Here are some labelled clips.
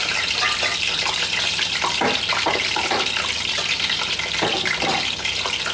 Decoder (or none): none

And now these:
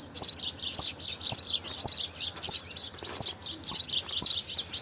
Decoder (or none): none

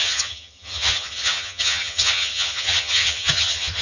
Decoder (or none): vocoder, HiFi-GAN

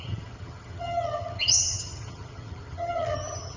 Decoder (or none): vocoder, HiFi-GAN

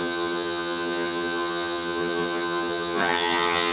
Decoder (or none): vocoder, HiFi-GAN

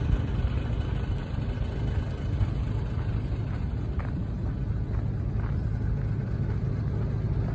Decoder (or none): none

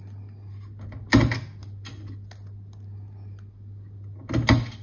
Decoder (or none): none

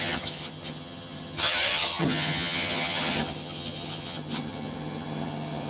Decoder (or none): vocoder, HiFi-GAN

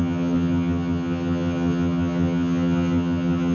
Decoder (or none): vocoder, HiFi-GAN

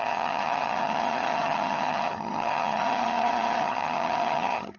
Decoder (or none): vocoder, HiFi-GAN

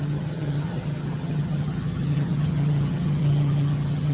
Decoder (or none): vocoder, HiFi-GAN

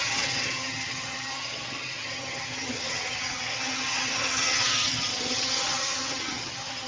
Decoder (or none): vocoder, HiFi-GAN